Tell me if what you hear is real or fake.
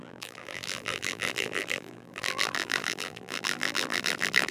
fake